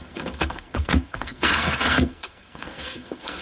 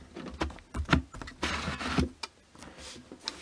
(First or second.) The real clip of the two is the second